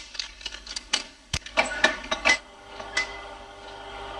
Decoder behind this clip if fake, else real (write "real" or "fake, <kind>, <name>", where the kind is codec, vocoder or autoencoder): fake, codec, DAC